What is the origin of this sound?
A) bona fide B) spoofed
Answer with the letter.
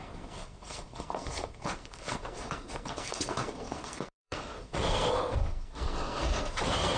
B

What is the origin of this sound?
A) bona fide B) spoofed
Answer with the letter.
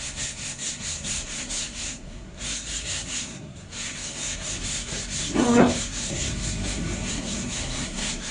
B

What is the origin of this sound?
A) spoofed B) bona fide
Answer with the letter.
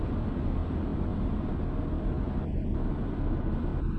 B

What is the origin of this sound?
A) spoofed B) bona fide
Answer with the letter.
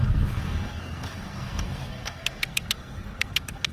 A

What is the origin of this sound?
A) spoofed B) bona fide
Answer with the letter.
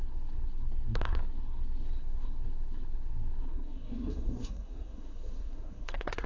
A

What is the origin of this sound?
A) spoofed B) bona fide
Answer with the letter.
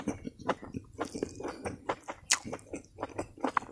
B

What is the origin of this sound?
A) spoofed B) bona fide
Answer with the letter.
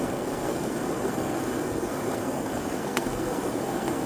A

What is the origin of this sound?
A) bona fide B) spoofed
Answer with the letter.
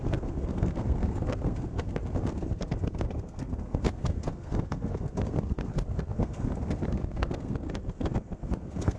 B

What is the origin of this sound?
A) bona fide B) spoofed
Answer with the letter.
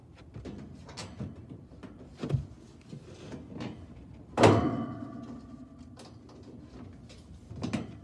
A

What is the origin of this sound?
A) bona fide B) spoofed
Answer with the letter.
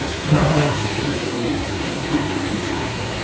B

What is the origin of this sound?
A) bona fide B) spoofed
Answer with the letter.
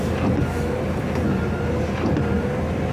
A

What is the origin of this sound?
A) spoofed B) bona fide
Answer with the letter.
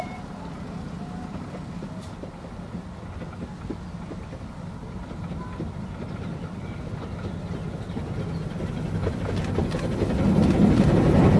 B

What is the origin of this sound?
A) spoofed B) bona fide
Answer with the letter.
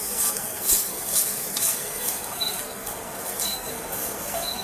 A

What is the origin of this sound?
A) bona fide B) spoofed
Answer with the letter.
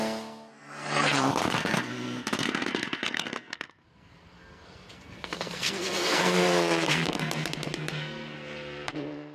B